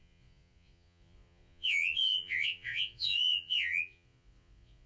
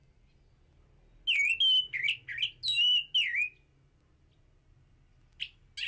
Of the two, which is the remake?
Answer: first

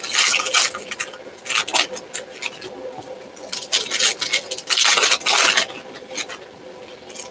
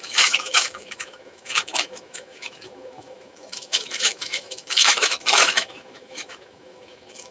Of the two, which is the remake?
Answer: second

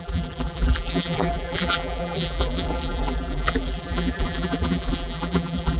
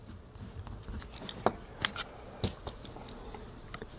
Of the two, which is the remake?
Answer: first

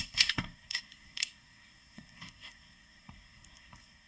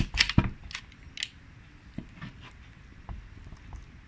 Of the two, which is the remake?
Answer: first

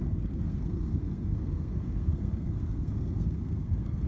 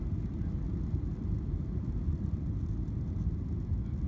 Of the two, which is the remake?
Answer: first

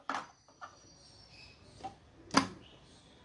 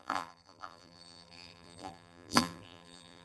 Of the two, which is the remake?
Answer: second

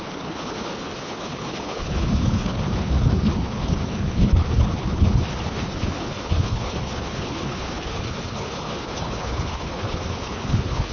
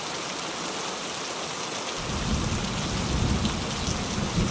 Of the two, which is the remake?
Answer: first